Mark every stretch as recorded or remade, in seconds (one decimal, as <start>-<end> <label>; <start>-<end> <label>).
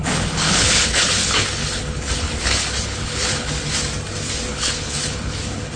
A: 0.0-3.5 remade; 3.5-4.5 recorded; 4.5-5.8 remade